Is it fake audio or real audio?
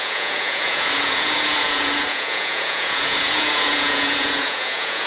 fake